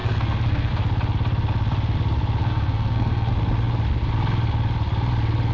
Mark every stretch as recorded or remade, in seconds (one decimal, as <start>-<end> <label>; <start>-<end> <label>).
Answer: 0.0-0.7 remade; 0.7-2.4 recorded; 2.4-3.3 remade; 3.3-5.5 recorded